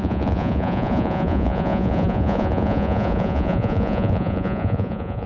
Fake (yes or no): yes